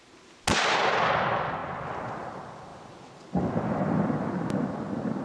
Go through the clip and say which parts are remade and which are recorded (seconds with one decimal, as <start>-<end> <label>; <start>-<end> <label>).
0.0-5.2 recorded